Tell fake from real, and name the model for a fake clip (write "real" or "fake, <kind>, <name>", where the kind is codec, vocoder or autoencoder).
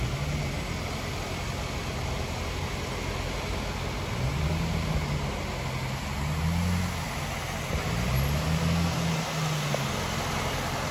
real